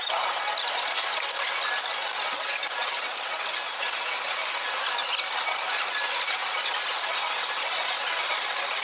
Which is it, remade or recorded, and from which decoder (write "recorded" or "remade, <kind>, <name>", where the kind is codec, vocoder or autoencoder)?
recorded